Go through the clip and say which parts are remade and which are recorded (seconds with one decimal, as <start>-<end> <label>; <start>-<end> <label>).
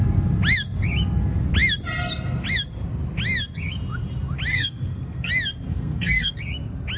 0.0-4.5 recorded; 4.5-5.3 remade; 5.3-5.7 recorded; 5.7-6.3 remade; 6.3-7.0 recorded